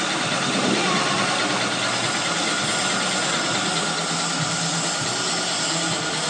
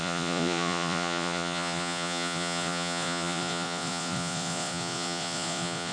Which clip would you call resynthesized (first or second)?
second